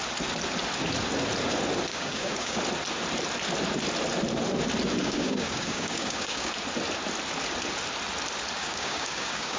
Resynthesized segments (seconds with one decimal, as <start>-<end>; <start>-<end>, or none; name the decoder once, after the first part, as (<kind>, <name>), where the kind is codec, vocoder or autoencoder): 1.9-2.6 (codec, DAC); 5.0-6.5; 8.6-9.6